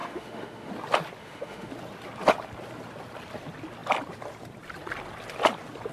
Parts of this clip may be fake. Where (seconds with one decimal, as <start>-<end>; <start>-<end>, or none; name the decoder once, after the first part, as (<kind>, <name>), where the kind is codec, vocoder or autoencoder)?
0.0-0.7 (autoencoder, DAC-VAE); 1.2-1.7